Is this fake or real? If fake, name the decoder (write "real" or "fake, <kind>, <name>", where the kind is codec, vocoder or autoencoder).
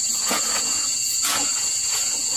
fake, vocoder, Vocos